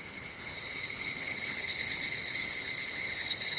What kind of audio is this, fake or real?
fake